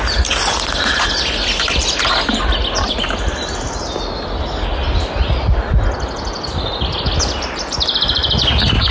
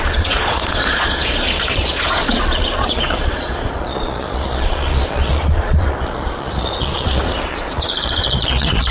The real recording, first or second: first